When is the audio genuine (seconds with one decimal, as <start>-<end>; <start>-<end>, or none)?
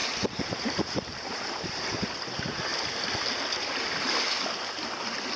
2.1-5.4